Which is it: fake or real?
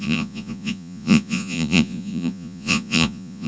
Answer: fake